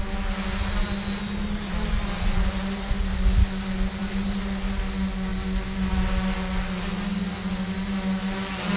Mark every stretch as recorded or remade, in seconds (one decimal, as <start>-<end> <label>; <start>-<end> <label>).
0.0-8.8 recorded